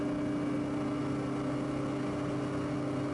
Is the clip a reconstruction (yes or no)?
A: no